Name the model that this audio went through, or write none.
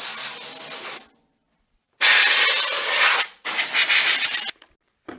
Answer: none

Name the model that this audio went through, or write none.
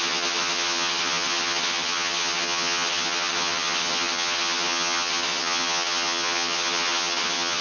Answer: vocoder, HiFi-GAN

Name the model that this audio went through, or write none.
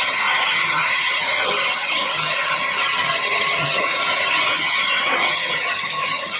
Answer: vocoder, HiFi-GAN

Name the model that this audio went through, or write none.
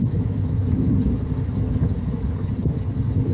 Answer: vocoder, HiFi-GAN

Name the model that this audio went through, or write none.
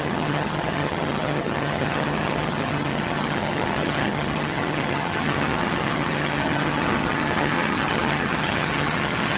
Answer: vocoder, HiFi-GAN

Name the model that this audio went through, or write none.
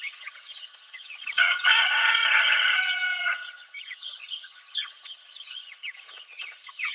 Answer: vocoder, HiFi-GAN